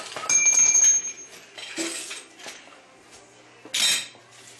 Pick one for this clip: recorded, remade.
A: recorded